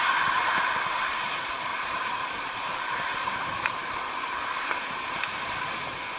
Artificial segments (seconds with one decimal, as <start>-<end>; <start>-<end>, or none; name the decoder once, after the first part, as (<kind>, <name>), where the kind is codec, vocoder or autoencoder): 1.7-5.4 (vocoder, BigVGAN v2)